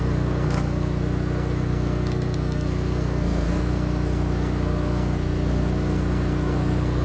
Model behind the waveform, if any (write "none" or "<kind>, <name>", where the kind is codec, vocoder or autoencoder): codec, SNAC